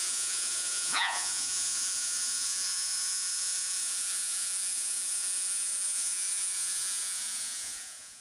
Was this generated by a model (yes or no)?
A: yes